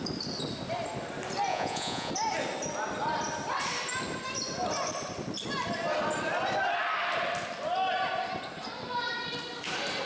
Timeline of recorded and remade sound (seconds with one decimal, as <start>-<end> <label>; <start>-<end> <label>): 0.0-1.5 recorded; 1.5-2.1 remade; 2.1-10.1 recorded